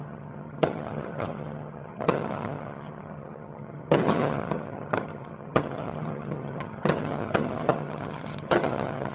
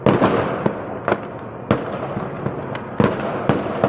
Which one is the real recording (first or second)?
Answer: second